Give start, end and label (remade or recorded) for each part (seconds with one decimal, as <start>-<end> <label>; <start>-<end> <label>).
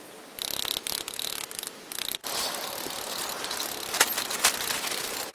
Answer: 0.0-2.2 recorded; 2.2-2.9 remade; 2.9-5.3 recorded